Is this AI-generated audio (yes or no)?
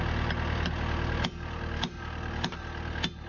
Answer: no